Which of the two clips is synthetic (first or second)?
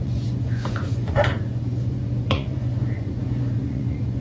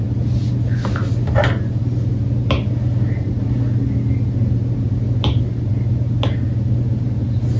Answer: first